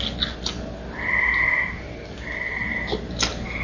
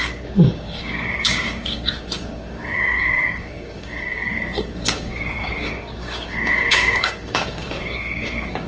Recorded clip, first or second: first